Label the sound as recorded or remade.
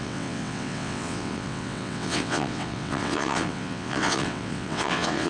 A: remade